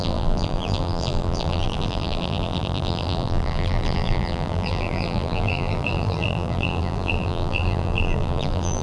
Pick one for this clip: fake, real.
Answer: fake